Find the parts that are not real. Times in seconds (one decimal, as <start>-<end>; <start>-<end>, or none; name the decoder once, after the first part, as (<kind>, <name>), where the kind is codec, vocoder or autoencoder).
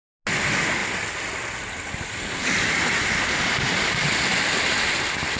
none